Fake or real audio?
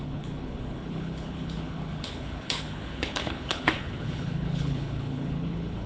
fake